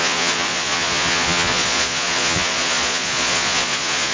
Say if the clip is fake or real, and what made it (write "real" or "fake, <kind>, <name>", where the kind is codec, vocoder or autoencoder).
fake, vocoder, Vocos